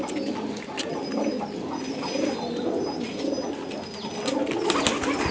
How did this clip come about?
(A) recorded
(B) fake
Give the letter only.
A